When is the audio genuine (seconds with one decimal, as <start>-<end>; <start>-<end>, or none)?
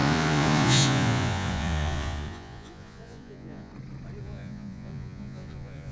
3.7-4.2